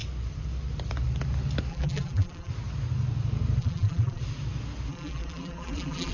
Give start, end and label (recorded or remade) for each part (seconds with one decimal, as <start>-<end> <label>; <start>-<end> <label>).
0.0-1.7 recorded; 1.7-2.5 remade; 2.5-3.6 recorded; 3.6-4.2 remade; 4.2-4.9 recorded; 4.9-6.1 remade